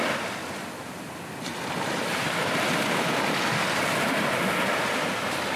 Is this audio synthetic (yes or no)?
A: no